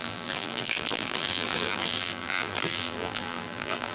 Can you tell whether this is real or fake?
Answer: fake